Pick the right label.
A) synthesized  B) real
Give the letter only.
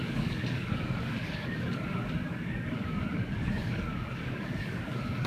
A